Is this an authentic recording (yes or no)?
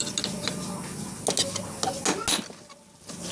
yes